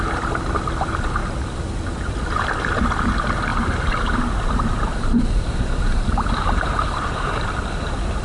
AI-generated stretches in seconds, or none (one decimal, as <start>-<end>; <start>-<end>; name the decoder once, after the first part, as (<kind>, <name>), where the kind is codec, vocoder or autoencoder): 3.5-8.2 (vocoder, BigVGAN v2)